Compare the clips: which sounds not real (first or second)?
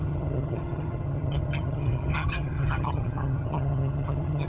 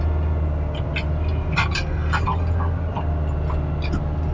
first